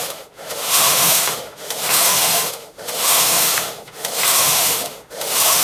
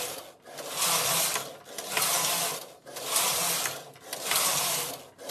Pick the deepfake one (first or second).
first